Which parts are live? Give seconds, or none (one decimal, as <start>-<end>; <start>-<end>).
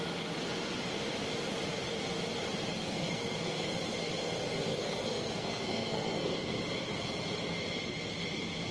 0.0-2.8; 3.7-4.7; 6.6-8.7